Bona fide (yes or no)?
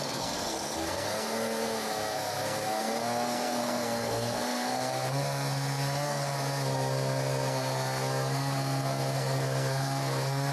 no